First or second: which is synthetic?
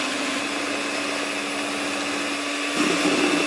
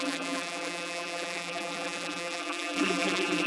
second